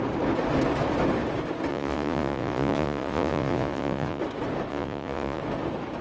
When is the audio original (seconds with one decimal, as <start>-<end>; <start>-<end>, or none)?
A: 0.0-1.7; 4.2-4.7; 5.4-6.0